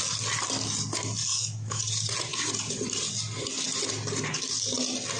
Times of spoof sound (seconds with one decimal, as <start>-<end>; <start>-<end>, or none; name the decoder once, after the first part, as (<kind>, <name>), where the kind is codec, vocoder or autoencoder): 1.3-1.8 (autoencoder, DAC-VAE)